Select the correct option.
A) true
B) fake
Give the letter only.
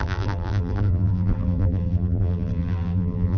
B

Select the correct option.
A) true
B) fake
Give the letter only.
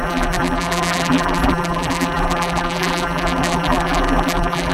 B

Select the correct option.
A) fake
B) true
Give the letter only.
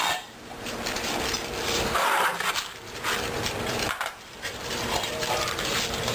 A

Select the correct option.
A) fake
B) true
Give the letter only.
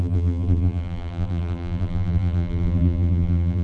A